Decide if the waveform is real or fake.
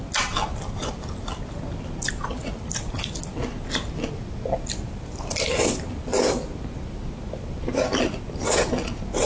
real